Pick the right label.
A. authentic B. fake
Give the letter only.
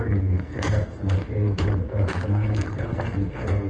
B